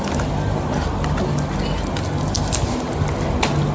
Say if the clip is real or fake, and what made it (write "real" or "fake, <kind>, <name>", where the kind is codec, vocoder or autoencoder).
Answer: real